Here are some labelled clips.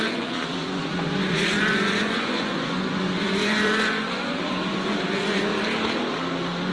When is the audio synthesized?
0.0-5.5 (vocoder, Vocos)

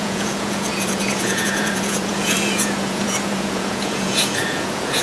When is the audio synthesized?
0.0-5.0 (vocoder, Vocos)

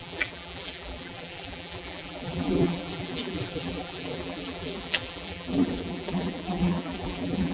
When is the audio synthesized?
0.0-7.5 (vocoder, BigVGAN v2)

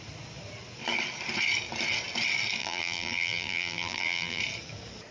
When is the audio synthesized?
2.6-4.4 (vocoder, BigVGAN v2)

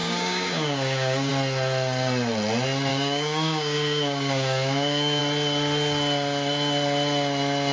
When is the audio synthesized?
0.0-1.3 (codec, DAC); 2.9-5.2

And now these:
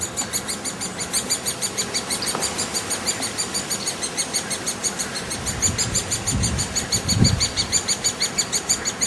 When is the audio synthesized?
4.8-5.3 (vocoder, BigVGAN v2)